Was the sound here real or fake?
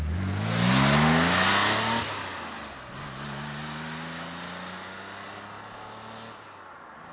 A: real